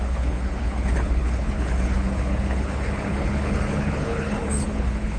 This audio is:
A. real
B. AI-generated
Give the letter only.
B